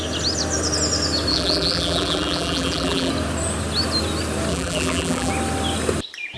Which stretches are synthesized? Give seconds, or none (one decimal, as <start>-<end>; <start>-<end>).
1.3-3.1; 4.5-5.3